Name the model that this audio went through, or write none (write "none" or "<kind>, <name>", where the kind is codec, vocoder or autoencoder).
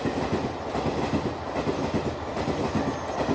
none